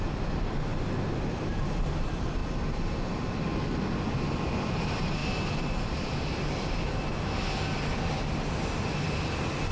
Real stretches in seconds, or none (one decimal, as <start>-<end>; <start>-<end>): 0.7-1.3; 2.4-4.4; 5.2-8.8